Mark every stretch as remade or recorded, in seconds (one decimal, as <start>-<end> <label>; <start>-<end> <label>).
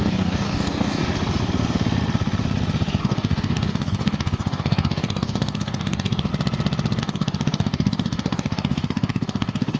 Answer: 0.0-1.0 remade; 1.0-3.0 recorded; 3.0-6.3 remade; 6.3-7.0 recorded; 7.0-9.8 remade